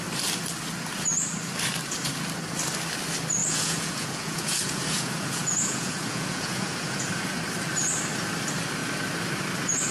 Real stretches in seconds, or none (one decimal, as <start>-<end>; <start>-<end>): 0.0-3.4; 7.1-9.9